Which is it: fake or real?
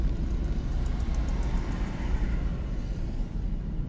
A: real